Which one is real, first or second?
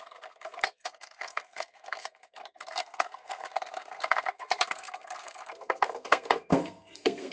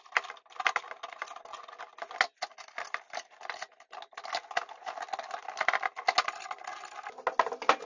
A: second